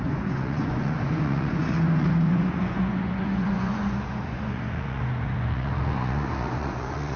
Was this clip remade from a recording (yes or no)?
yes